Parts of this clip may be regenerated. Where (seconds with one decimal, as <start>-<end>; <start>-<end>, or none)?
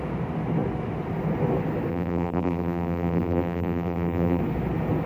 1.9-4.4